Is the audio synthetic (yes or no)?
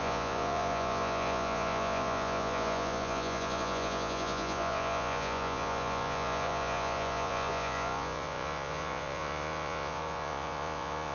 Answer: yes